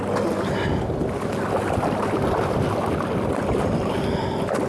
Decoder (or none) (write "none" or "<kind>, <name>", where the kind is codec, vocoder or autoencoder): none